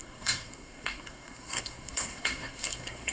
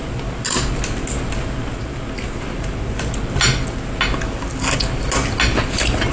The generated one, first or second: first